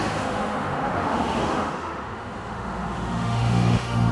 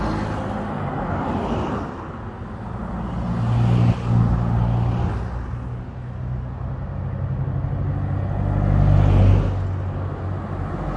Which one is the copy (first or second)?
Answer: first